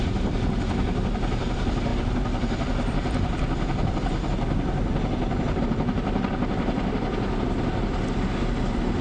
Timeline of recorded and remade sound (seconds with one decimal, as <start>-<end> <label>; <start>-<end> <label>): 0.0-9.0 recorded